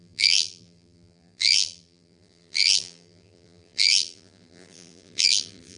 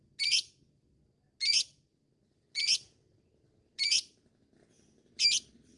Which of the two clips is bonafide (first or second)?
second